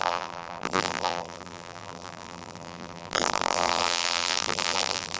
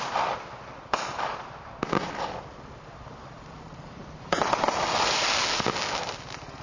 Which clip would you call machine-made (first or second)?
first